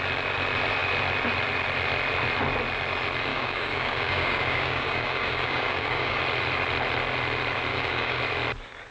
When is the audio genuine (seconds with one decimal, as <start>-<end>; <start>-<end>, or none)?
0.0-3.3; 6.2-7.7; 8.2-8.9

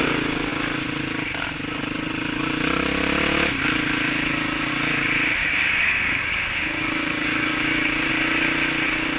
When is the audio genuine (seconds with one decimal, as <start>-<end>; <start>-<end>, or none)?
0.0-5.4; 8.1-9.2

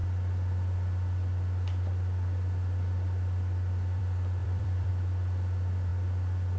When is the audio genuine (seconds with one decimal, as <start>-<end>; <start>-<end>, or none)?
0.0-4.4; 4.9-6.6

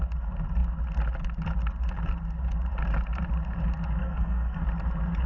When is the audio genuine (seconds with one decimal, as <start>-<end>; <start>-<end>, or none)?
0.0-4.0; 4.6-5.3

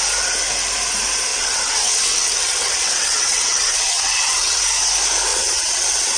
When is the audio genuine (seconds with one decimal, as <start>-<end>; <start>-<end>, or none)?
0.0-1.3; 4.6-5.3

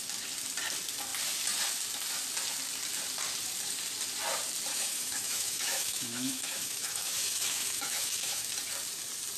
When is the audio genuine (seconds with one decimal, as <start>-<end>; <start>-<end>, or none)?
0.0-4.7; 8.5-9.4